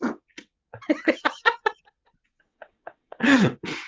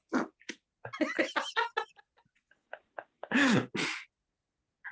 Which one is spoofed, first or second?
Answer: first